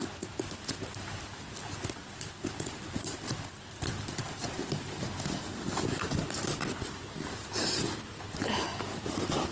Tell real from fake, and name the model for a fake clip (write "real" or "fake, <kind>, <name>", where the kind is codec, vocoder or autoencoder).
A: real